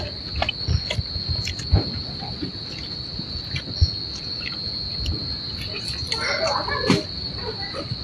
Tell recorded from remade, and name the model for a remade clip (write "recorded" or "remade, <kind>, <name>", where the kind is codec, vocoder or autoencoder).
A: recorded